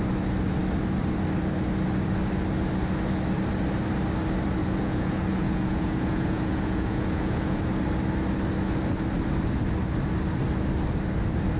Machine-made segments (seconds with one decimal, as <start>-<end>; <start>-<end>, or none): 4.6-7.6